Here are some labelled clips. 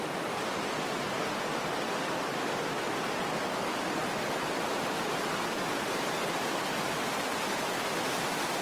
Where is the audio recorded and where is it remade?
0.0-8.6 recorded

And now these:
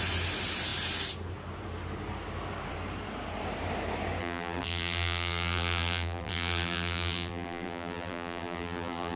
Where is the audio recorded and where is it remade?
0.0-4.2 recorded; 4.2-9.2 remade